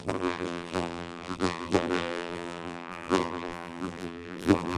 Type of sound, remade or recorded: remade